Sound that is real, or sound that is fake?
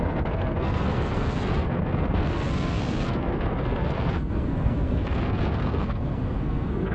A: fake